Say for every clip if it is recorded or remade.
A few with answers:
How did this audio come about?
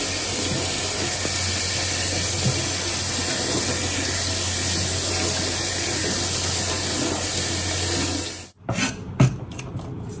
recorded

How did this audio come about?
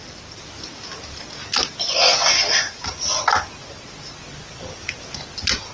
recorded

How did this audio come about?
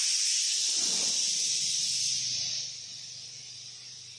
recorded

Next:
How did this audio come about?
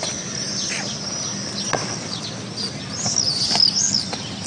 recorded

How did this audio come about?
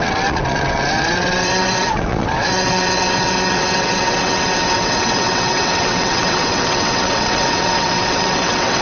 remade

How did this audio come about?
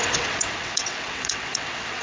remade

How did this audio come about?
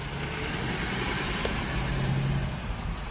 recorded